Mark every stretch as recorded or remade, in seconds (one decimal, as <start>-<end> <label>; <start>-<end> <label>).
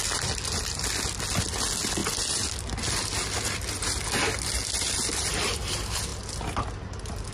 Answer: 0.0-7.3 recorded